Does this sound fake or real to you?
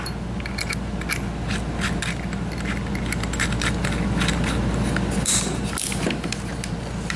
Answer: real